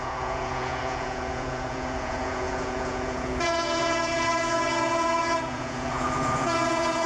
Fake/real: fake